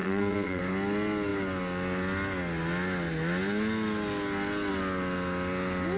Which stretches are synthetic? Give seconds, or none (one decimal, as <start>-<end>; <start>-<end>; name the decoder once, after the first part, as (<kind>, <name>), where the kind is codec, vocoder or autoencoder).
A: 0.0-0.6 (vocoder, Vocos)